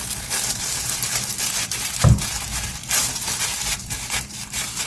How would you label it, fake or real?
real